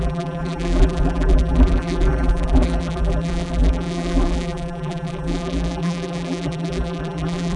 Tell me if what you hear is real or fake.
fake